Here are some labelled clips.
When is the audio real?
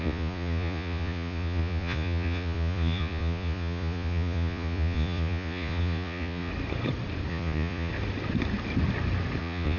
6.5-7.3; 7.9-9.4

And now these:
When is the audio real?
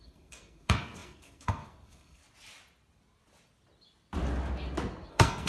2.2-5.1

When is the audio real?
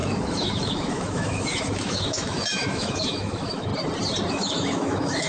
3.7-4.3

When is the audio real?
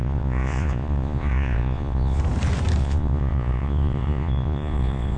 2.2-2.8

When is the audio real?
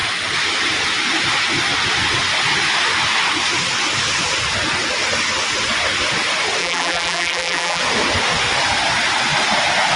0.0-6.6; 7.8-10.0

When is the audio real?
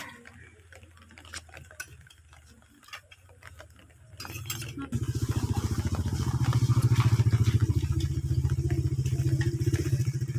0.0-10.4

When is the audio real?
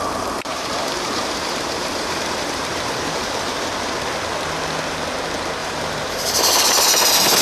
0.0-0.5; 3.7-5.6; 6.6-7.4